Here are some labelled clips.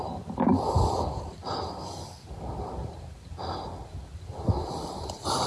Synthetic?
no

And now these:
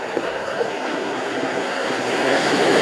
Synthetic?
yes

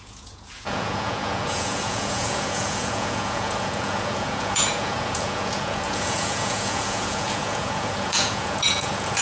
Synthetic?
yes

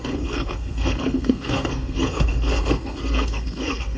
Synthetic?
yes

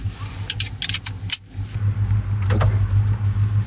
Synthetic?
no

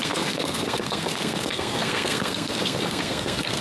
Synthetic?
yes